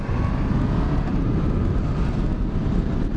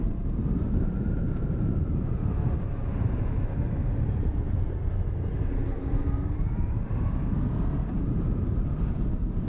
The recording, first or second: first